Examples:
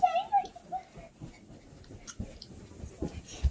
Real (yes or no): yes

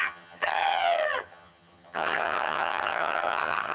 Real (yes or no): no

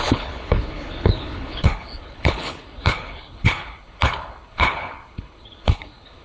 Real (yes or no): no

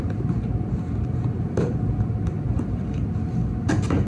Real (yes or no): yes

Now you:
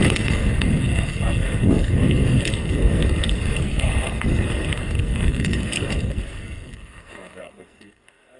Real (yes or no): no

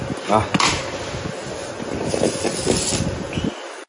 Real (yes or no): yes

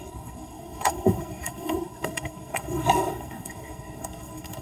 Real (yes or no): no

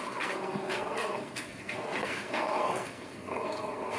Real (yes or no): no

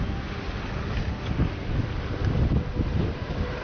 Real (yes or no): yes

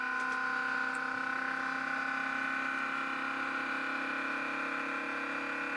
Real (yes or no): yes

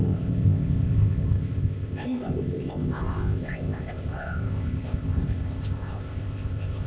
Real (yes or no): no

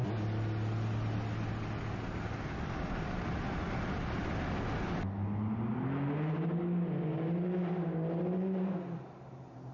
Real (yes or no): yes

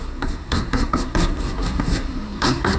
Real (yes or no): no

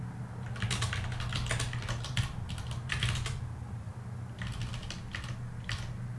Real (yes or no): yes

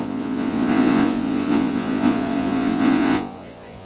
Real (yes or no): no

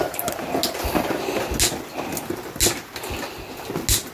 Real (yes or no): yes